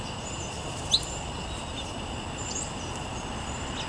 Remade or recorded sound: recorded